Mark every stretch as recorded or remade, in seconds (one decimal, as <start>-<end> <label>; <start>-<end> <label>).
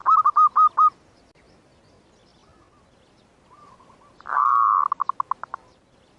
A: 0.0-6.2 recorded